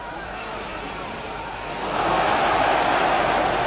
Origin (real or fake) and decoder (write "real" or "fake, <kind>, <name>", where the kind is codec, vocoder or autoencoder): real